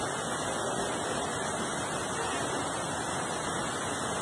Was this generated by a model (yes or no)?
no